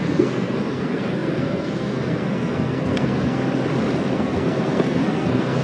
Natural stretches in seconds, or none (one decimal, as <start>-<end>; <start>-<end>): 3.4-4.1